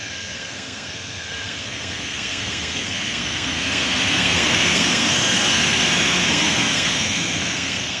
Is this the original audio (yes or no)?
no